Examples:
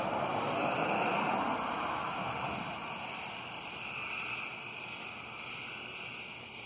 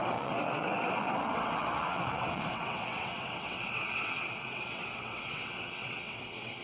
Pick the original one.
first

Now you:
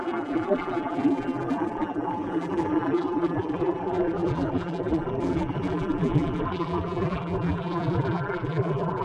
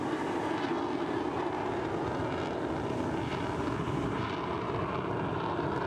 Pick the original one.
second